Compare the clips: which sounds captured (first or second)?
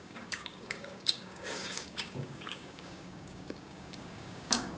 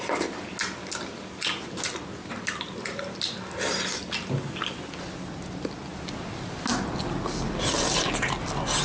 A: second